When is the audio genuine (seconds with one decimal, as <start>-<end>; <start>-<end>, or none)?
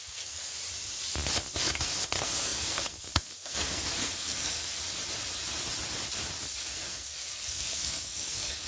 0.6-1.6; 4.8-6.6